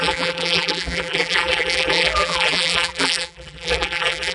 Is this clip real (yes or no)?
no